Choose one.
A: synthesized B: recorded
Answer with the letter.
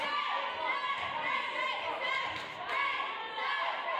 B